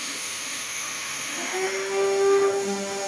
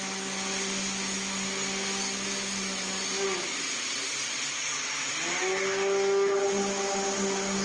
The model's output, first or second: first